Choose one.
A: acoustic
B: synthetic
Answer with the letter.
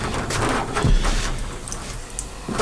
A